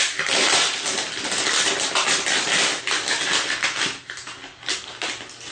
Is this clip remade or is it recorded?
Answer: recorded